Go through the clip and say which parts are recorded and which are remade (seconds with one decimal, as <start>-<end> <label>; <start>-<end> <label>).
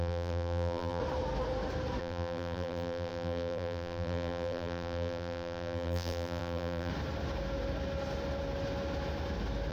0.0-1.0 remade; 1.0-2.0 recorded; 2.0-6.9 remade; 6.9-9.7 recorded